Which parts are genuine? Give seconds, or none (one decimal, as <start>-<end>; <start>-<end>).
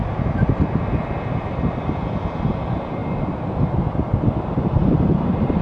0.0-5.6